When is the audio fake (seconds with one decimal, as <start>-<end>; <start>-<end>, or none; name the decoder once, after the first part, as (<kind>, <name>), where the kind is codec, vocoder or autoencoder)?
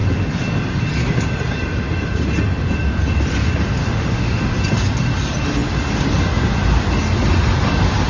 3.8-4.4 (autoencoder, DAC-VAE)